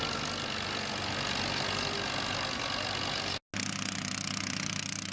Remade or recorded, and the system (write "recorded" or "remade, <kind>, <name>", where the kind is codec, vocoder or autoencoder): recorded